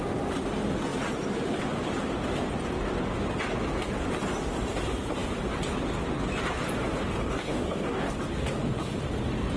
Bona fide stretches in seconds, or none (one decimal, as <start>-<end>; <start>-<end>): 0.0-7.0; 8.1-9.6